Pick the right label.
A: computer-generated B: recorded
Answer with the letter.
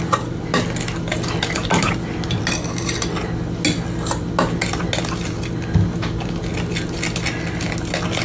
B